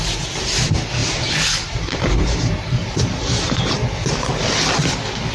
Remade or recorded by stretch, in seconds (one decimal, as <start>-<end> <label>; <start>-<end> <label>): 0.0-1.0 recorded; 1.0-4.1 remade; 4.1-5.3 recorded